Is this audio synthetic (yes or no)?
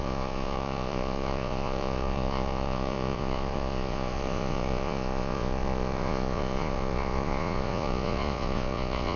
yes